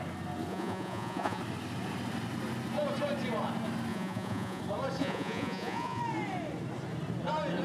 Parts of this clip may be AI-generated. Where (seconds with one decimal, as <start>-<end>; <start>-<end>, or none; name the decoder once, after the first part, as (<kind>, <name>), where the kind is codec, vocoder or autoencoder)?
0.5-1.4 (vocoder, Vocos); 3.9-4.6; 5.0-6.0